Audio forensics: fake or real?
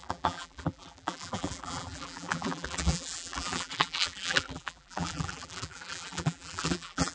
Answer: fake